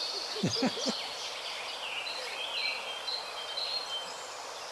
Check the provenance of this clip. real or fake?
real